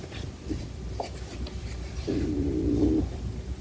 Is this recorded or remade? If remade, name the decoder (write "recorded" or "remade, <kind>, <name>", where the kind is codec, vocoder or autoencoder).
remade, vocoder, BigVGAN v2